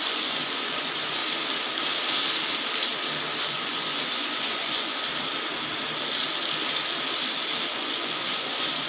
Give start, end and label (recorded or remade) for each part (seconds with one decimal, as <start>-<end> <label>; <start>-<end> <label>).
0.0-1.2 remade; 1.2-3.4 recorded; 3.4-4.9 remade; 4.9-7.7 recorded; 7.7-8.9 remade